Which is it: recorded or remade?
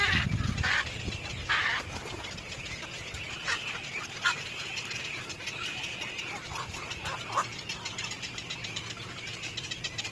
recorded